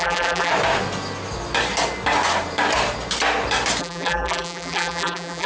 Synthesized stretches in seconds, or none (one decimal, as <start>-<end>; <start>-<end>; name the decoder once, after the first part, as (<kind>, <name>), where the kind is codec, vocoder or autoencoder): 0.0-0.5 (vocoder, BigVGAN v2); 3.8-5.5